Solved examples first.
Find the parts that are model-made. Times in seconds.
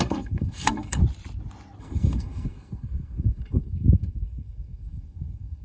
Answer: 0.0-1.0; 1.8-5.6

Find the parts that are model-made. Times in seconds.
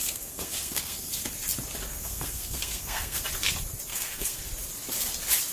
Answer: 0.0-1.2; 1.9-3.2; 3.9-4.4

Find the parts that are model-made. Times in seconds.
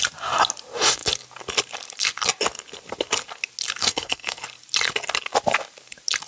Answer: 3.8-4.4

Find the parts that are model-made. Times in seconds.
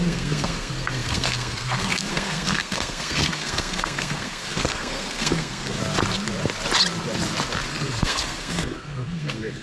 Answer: 0.0-5.8; 7.7-9.6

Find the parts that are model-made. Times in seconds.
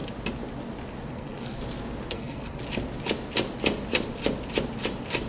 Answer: 1.1-1.6; 2.1-2.6